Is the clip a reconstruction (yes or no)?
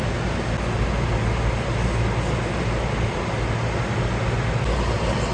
no